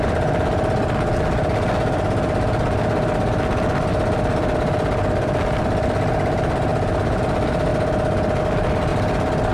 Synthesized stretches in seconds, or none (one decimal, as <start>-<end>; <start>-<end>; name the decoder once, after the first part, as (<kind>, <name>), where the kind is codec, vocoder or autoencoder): none